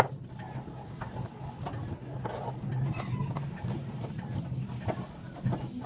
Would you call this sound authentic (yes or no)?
yes